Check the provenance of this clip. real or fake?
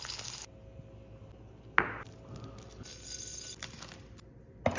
real